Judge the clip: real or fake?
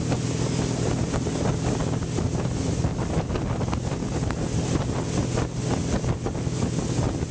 real